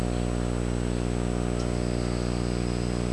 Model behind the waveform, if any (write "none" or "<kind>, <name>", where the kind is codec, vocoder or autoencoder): none